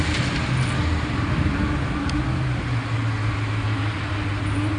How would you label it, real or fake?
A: real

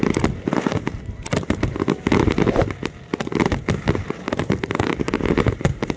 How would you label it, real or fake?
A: real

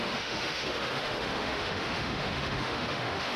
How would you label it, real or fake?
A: fake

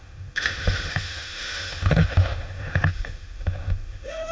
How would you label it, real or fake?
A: fake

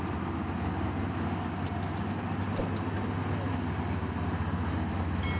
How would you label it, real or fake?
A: real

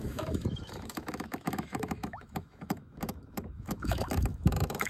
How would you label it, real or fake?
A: fake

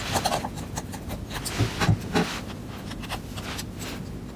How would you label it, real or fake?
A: real